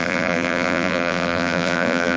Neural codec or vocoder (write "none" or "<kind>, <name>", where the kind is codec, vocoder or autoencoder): vocoder, BigVGAN v2